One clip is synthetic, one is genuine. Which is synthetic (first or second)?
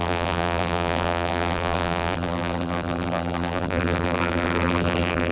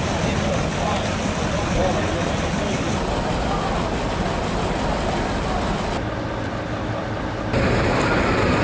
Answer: first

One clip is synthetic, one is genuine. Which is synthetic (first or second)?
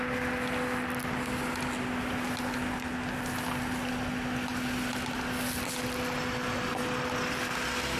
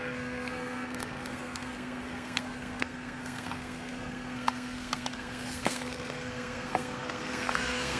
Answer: second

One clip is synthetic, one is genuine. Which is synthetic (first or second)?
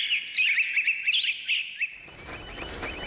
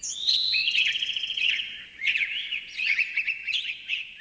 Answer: second